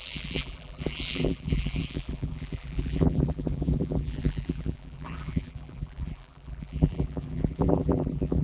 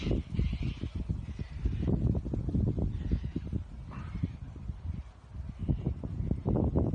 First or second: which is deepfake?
first